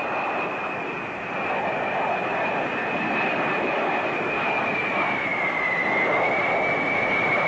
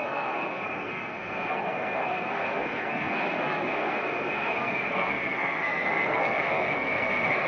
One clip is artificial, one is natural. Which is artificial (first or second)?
second